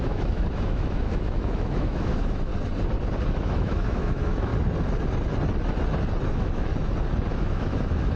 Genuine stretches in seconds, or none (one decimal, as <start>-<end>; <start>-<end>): 2.5-3.3; 4.5-6.3; 6.7-7.4